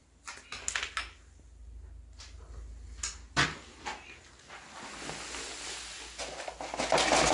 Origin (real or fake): real